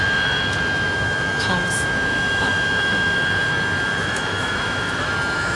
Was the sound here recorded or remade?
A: remade